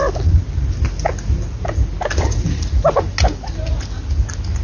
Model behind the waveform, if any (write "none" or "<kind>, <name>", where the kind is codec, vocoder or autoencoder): none